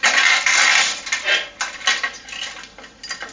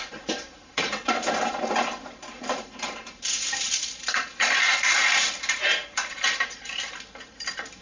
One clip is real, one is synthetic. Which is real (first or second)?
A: first